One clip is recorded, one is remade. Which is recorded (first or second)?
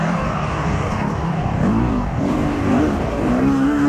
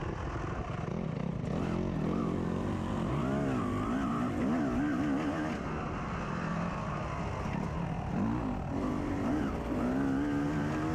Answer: second